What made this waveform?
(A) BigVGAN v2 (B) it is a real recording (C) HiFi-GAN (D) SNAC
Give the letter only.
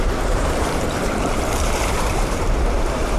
A